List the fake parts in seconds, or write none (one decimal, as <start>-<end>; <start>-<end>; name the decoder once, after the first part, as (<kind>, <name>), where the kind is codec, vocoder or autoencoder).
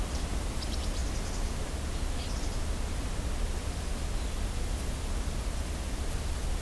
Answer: none